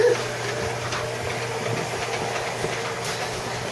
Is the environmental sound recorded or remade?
recorded